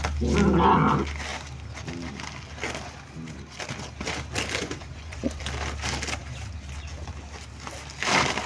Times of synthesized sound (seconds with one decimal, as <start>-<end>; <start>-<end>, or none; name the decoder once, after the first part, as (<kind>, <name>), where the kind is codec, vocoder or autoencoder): 4.6-5.4 (vocoder, Vocos)